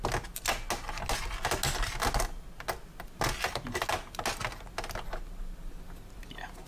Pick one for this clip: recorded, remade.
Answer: recorded